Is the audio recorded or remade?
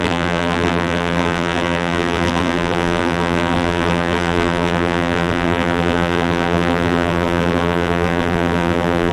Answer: remade